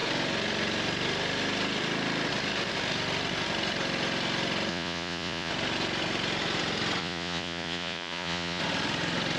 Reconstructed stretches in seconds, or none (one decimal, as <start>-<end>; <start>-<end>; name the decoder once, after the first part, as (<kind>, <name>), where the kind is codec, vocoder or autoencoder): 4.7-5.5 (vocoder, Vocos); 7.0-8.6